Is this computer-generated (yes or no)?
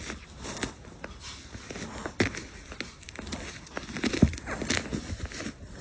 no